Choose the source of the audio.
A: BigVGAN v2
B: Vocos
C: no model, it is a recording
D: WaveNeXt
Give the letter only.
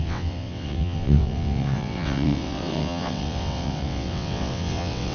D